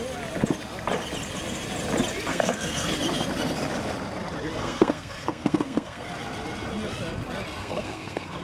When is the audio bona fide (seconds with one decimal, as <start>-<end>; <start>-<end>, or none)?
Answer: 0.0-2.3; 2.9-4.6; 6.1-7.6